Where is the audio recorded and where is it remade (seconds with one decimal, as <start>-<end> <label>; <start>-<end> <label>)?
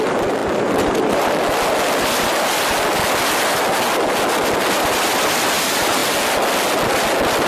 0.0-7.5 recorded